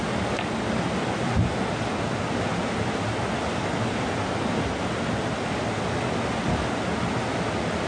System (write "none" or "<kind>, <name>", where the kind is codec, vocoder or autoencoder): none